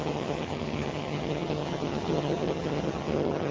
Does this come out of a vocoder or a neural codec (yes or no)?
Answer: yes